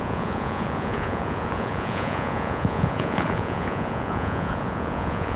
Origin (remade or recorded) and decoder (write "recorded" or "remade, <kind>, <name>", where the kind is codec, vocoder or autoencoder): remade, vocoder, Vocos